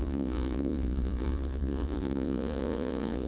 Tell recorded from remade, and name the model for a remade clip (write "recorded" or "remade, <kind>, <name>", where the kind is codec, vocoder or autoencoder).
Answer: remade, vocoder, Vocos